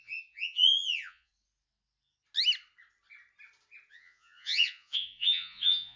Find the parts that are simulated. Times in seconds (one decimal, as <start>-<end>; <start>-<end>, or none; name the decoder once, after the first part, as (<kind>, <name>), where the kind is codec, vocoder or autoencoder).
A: 0.0-1.3 (vocoder, Vocos); 3.9-6.0